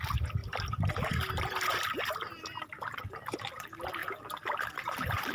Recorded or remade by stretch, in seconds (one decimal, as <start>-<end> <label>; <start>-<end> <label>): 0.0-4.0 recorded; 4.0-5.3 remade